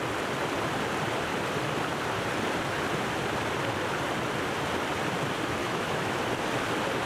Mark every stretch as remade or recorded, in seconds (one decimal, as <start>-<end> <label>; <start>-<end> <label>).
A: 0.0-5.6 recorded; 5.6-6.2 remade; 6.2-7.1 recorded